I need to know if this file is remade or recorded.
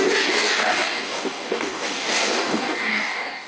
remade